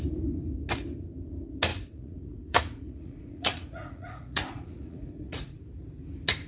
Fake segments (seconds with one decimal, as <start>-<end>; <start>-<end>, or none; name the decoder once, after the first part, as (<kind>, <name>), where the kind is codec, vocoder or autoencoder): 1.7-5.6 (vocoder, Vocos)